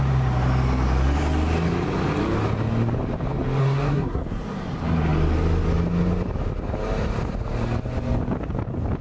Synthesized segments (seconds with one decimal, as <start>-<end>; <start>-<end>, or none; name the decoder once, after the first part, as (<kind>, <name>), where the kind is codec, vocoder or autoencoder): 3.6-4.2 (codec, SNAC)